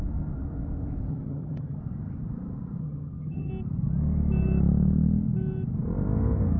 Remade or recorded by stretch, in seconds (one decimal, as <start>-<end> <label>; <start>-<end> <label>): 0.0-1.1 recorded; 1.1-1.8 remade; 1.8-2.8 recorded; 2.8-3.5 remade; 3.5-6.6 recorded